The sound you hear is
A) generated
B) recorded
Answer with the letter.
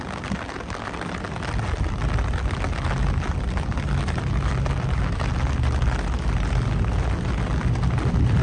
B